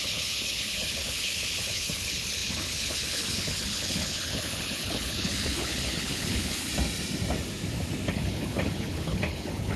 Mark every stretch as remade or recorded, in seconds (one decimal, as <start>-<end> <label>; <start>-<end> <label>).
0.0-6.7 remade; 6.7-8.1 recorded; 8.1-9.8 remade